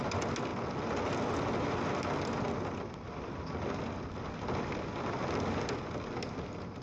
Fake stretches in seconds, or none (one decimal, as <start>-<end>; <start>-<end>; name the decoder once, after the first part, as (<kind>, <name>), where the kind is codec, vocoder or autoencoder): none